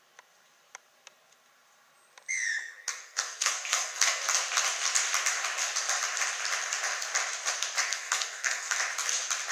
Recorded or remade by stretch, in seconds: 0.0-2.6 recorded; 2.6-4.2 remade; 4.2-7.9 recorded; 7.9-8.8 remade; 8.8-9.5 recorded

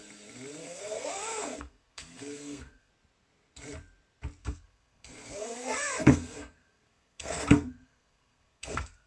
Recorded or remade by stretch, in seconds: 0.0-0.6 recorded; 0.6-2.9 remade; 2.9-4.4 recorded; 4.4-9.1 remade

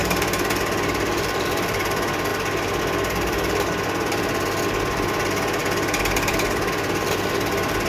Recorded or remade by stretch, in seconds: 0.0-0.6 remade; 0.6-7.9 recorded

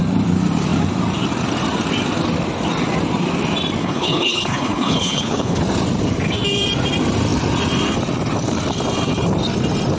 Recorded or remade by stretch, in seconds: 0.0-3.8 recorded; 3.8-5.6 remade; 5.6-10.0 recorded

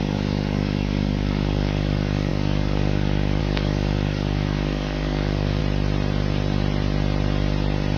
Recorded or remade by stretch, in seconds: 0.0-5.6 remade; 5.6-8.0 recorded

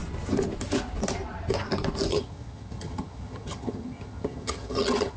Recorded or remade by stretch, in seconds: 0.0-2.1 recorded; 2.1-5.2 remade

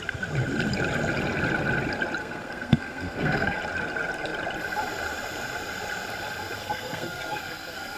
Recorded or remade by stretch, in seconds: 0.0-2.2 recorded; 2.2-3.6 remade; 3.6-6.6 recorded; 6.6-8.0 remade